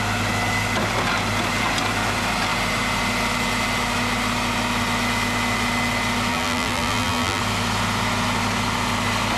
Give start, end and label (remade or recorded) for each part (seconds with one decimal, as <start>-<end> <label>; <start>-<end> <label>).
0.0-6.3 recorded; 6.3-7.4 remade; 7.4-9.4 recorded